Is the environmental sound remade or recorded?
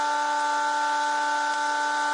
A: recorded